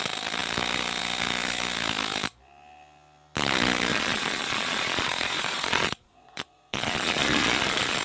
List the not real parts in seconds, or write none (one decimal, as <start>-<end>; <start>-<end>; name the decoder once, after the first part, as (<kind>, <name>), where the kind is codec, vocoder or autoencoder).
3.9-8.0 (vocoder, Vocos)